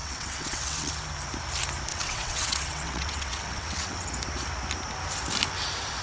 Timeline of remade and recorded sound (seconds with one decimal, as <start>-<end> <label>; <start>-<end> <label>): 0.0-0.9 remade; 0.9-1.9 recorded; 1.9-4.1 remade; 4.1-6.0 recorded